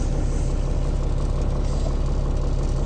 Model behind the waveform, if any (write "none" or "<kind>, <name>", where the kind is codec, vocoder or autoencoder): none